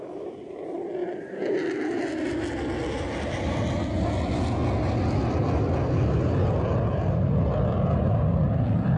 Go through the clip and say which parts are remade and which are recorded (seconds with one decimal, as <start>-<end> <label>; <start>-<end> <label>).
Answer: 0.0-9.0 recorded